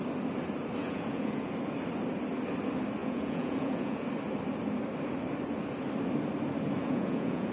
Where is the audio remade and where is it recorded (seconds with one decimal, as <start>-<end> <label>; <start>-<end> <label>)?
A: 0.0-0.8 recorded; 0.8-1.5 remade; 1.5-3.0 recorded; 3.0-4.1 remade; 4.1-6.8 recorded; 6.8-7.5 remade